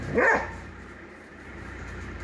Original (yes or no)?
no